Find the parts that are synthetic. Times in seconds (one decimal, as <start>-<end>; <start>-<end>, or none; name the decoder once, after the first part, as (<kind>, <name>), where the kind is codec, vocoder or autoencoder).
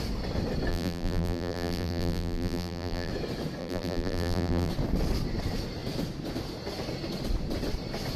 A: 0.7-3.1 (vocoder, BigVGAN v2); 3.6-4.7